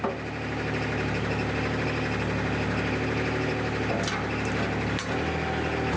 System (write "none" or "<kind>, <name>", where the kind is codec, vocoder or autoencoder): none